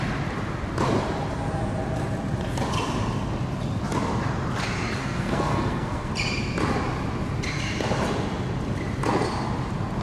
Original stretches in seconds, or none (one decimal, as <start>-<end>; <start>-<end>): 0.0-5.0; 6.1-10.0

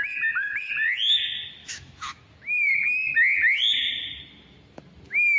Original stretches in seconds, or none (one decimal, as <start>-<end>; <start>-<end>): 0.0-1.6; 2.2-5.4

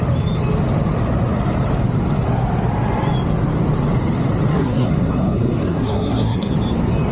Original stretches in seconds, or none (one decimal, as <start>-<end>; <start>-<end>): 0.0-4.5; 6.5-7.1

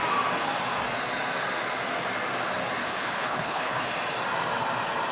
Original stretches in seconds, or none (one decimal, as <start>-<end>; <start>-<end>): 0.0-2.8; 3.9-5.1

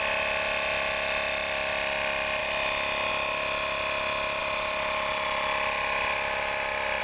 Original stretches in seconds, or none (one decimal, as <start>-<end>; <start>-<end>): 0.0-7.0

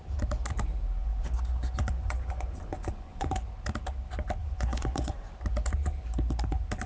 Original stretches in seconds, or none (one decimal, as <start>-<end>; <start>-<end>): 0.0-1.0; 3.3-4.4; 5.3-6.9

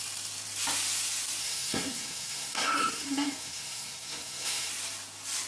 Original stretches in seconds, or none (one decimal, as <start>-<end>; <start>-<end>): 0.0-1.4; 4.7-5.5